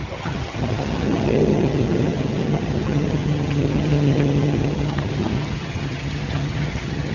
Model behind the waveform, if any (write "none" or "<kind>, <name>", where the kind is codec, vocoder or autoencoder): vocoder, HiFi-GAN